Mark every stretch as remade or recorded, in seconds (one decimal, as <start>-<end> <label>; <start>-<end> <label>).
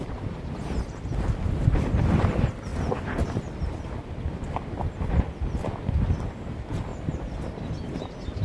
0.0-8.4 recorded